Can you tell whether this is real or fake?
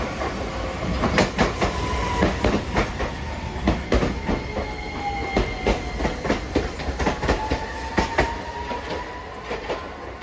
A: real